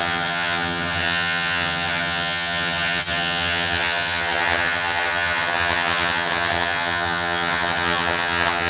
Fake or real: fake